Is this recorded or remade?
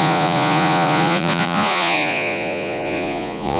remade